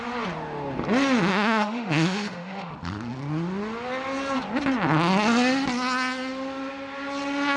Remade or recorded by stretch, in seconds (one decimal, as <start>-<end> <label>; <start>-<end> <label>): 0.0-1.3 recorded; 1.3-2.7 remade; 2.7-7.6 recorded